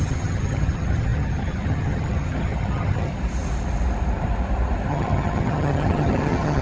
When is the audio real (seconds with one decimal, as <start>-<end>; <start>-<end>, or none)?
3.1-4.9